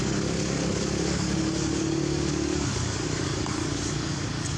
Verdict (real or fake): fake